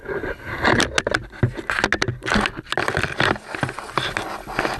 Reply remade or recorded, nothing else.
recorded